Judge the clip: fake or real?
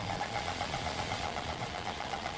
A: fake